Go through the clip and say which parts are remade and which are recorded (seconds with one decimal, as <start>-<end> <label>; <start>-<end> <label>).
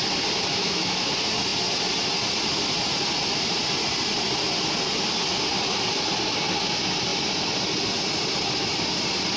0.0-0.5 recorded; 0.5-1.1 remade; 1.1-9.4 recorded